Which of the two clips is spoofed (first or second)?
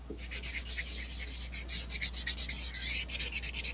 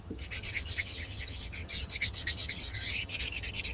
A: second